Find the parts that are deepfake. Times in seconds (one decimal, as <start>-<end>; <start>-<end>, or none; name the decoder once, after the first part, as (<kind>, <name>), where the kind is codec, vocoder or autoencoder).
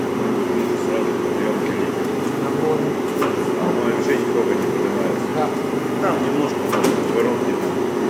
none